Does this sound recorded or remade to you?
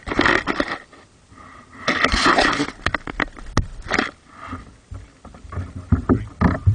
recorded